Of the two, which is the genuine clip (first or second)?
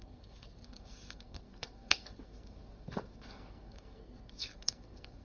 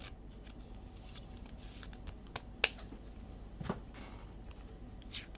second